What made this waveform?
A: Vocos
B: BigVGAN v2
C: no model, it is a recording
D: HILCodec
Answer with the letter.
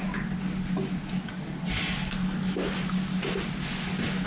C